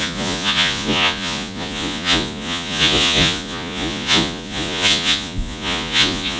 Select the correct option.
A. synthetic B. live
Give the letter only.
A